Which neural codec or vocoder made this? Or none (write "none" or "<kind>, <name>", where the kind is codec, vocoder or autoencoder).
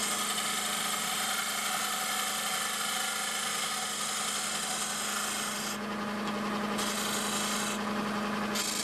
none